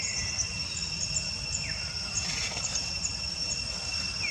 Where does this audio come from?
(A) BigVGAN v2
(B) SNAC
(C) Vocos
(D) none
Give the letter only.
D